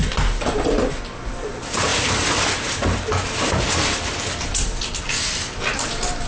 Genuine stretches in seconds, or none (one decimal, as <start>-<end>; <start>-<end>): 0.0-6.3